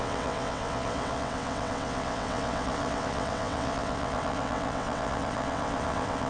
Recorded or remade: remade